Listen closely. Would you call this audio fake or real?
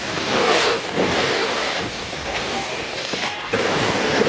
fake